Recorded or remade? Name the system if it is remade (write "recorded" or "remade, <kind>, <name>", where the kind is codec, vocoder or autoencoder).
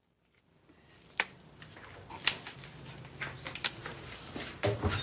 recorded